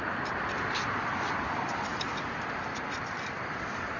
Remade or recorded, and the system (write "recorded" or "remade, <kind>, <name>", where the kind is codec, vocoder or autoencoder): recorded